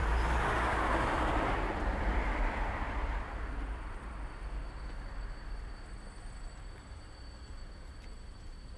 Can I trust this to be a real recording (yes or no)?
no